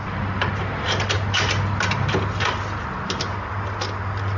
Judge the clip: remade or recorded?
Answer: recorded